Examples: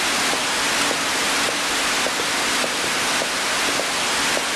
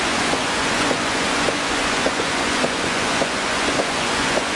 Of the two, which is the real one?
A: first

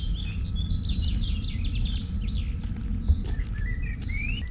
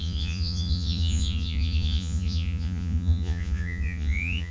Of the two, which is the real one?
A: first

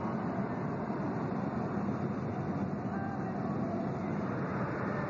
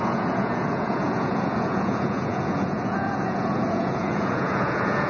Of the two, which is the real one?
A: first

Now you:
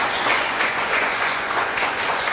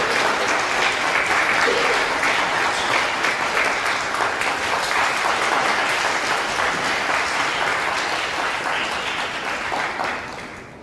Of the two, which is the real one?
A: second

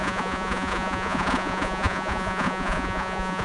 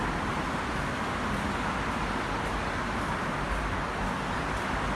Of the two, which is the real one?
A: second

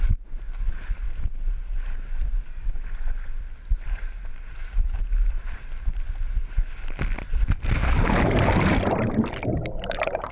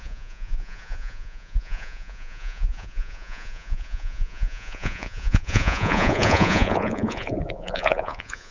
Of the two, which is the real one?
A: first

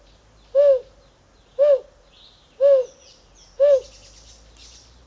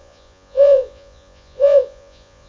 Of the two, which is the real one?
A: first